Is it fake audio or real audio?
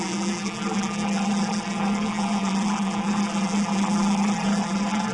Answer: fake